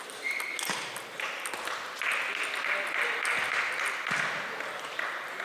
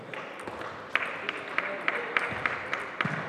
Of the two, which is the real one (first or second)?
first